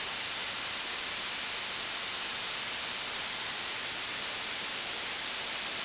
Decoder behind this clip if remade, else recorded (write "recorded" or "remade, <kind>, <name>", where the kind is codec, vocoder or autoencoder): recorded